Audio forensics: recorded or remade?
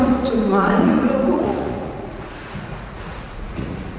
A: remade